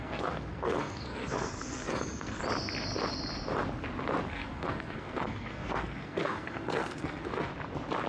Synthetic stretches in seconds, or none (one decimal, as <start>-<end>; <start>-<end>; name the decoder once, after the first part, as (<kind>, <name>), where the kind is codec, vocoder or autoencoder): 0.0-2.4 (codec, SNAC); 4.3-7.5